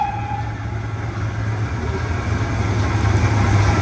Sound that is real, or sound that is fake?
real